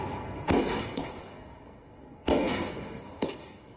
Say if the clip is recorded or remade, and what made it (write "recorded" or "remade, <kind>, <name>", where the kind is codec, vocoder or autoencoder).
remade, codec, SNAC